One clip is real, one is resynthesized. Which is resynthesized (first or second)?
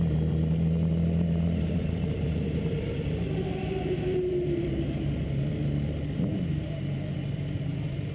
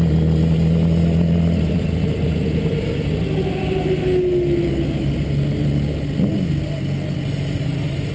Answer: first